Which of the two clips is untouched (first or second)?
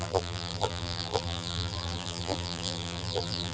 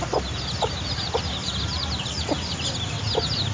second